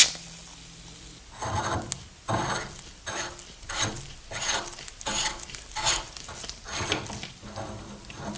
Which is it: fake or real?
real